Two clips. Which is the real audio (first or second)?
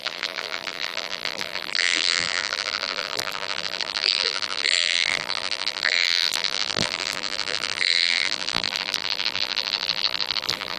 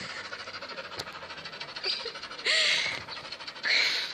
second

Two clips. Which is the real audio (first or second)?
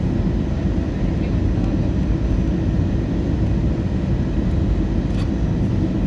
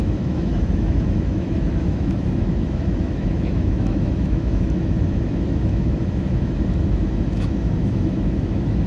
first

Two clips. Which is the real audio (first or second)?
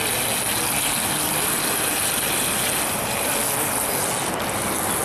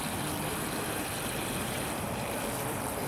first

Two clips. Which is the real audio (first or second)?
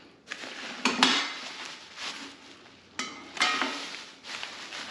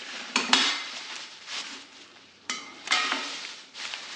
first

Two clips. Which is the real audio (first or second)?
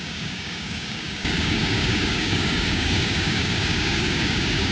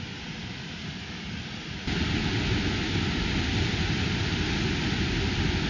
second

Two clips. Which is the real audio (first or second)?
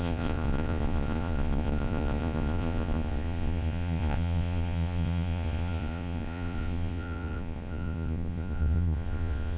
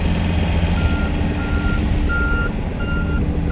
second